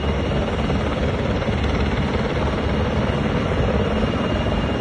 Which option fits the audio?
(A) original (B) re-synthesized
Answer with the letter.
A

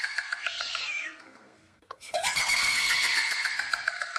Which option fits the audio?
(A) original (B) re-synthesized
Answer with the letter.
B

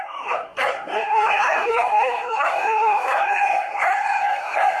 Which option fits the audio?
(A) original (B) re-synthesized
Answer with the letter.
B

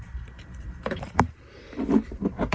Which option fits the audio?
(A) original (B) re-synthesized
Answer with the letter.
B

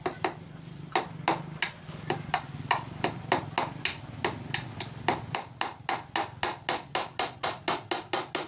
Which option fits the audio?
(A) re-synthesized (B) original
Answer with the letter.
B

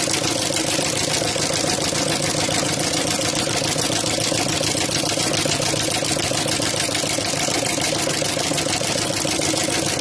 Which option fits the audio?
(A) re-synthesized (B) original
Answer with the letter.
B